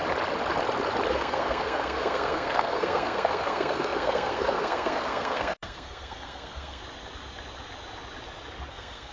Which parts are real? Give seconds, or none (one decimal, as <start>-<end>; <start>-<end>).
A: 0.0-1.1; 6.8-8.7